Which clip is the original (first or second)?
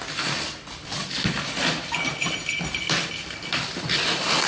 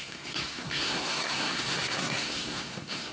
first